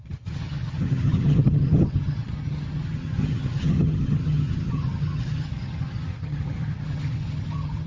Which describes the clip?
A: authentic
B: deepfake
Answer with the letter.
B